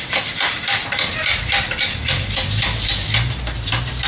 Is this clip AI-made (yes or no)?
no